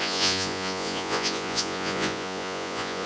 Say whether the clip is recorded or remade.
remade